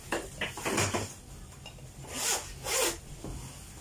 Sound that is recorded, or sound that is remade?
recorded